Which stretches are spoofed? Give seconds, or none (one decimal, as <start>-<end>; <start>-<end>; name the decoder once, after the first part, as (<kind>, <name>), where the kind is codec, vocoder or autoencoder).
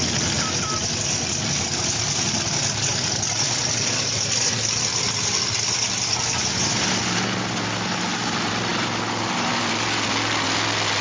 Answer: none